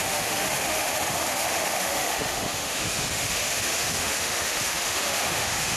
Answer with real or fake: fake